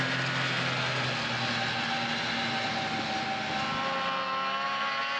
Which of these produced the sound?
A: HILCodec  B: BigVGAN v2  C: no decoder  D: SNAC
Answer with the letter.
C